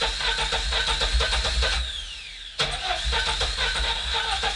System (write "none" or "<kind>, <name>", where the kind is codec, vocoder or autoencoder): none